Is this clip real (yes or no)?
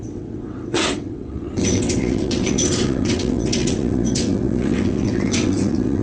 no